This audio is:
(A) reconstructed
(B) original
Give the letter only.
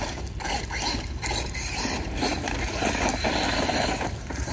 B